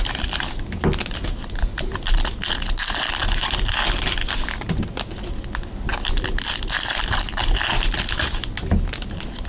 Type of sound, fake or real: real